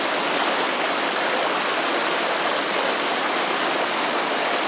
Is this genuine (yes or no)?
yes